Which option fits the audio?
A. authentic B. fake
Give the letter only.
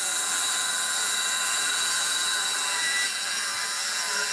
B